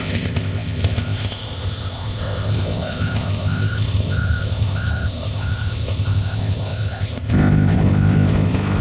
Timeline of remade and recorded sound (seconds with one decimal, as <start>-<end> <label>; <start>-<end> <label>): 0.0-8.8 remade